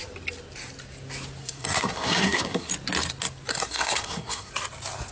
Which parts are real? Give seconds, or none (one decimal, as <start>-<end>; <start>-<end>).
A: 0.0-1.4; 2.7-3.5; 4.5-5.1